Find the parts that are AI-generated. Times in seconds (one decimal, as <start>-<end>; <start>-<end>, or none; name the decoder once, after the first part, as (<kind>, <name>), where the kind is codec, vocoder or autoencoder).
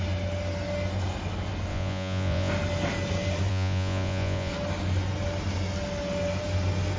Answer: 1.7-2.5 (vocoder, Vocos); 3.5-4.5